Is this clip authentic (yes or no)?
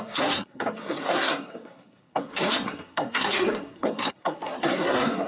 no